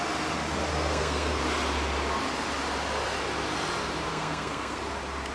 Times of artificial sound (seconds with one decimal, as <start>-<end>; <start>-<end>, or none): 0.7-1.4; 4.1-4.8

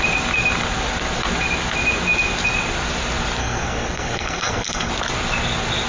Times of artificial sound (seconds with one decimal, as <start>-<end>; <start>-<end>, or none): 3.4-4.9

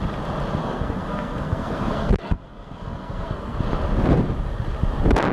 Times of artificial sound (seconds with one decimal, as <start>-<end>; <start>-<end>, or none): 0.6-3.6